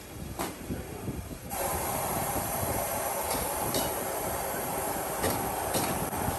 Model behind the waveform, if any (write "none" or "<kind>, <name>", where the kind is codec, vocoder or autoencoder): vocoder, BigVGAN v2